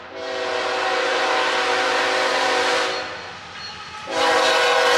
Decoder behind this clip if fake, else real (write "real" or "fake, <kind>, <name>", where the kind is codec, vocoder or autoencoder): real